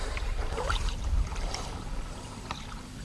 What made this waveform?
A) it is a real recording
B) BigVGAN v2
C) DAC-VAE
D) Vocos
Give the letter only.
B